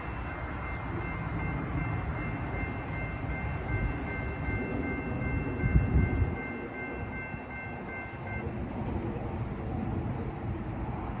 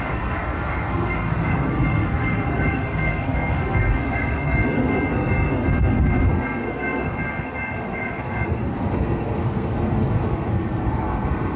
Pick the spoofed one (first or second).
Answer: second